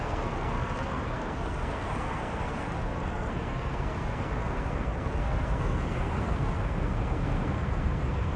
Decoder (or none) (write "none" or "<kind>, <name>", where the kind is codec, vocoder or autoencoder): codec, SNAC